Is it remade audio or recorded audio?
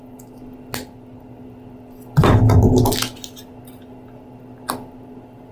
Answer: recorded